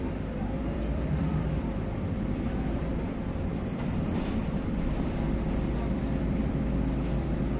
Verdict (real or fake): fake